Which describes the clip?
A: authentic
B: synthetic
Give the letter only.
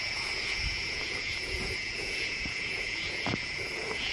B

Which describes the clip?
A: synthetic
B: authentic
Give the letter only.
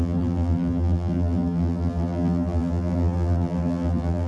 A